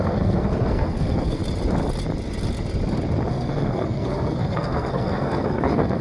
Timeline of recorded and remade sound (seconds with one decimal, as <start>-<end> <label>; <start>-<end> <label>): 0.0-1.4 remade; 1.4-3.3 recorded; 3.3-6.0 remade